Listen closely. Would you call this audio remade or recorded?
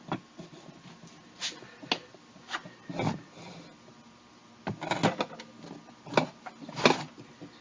recorded